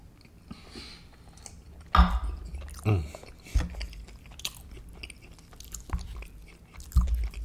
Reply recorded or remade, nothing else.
recorded